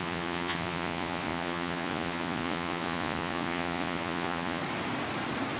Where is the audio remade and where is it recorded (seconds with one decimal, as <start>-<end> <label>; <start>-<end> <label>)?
0.0-4.6 remade; 4.6-5.6 recorded